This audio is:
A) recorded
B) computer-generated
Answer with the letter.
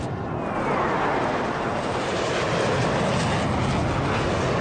A